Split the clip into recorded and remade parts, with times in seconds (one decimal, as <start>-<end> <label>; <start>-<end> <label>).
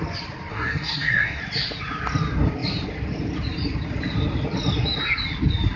0.0-0.5 recorded; 0.5-1.4 remade; 1.4-5.8 recorded